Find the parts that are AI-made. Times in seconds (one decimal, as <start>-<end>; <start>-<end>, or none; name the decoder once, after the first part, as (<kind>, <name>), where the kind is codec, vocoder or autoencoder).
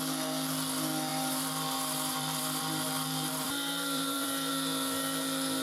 1.1-4.5 (vocoder, BigVGAN v2)